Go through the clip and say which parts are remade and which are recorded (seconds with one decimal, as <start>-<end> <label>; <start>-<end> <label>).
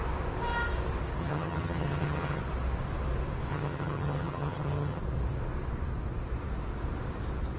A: 0.0-1.2 recorded; 1.2-2.4 remade; 2.4-3.5 recorded; 3.5-5.0 remade; 5.0-7.6 recorded